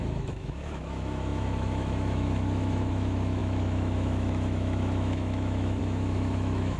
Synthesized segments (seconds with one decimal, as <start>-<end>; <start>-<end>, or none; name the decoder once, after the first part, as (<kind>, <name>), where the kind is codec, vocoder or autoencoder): 0.0-6.8 (autoencoder, DAC-VAE)